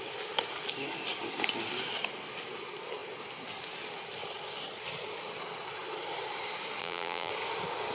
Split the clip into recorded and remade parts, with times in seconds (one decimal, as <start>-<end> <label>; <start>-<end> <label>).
0.0-6.8 recorded; 6.8-7.3 remade; 7.3-7.9 recorded